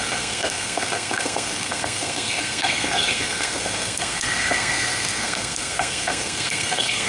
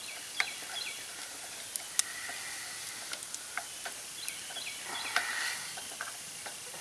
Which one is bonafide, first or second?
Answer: second